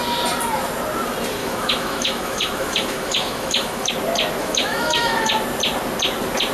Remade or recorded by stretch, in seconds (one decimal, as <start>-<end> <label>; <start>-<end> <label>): 0.0-1.4 recorded; 1.4-3.9 remade; 3.9-4.4 recorded; 4.4-5.3 remade; 5.3-6.5 recorded